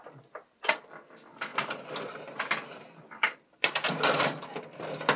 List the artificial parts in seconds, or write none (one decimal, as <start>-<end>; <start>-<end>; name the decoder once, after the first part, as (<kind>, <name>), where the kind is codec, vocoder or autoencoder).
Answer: 1.5-4.4 (vocoder, BigVGAN v2)